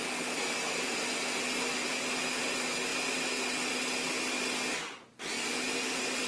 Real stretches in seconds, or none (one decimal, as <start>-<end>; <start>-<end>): 0.0-6.3